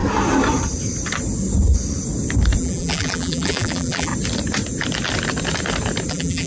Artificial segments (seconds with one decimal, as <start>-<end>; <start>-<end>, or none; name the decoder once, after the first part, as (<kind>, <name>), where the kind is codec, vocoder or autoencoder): 2.6-4.1 (vocoder, BigVGAN v2); 6.1-6.5